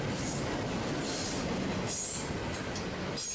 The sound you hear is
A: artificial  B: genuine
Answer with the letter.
B